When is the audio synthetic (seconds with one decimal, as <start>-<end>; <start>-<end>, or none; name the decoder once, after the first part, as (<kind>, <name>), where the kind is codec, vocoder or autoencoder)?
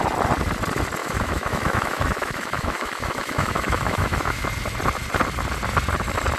1.0-4.5 (autoencoder, DAC-VAE)